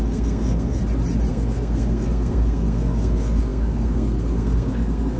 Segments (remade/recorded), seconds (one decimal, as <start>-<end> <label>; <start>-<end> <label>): 0.0-0.8 remade; 0.8-1.3 recorded; 1.3-5.2 remade